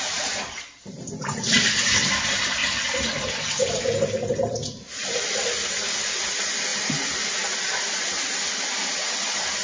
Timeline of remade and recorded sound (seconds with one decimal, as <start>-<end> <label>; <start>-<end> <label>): 0.0-2.6 recorded; 2.6-6.2 remade; 6.2-6.7 recorded; 6.7-7.3 remade; 7.3-9.6 recorded